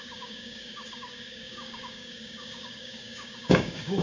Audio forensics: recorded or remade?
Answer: remade